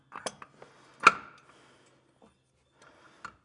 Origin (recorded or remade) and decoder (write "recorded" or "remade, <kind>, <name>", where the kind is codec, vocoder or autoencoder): recorded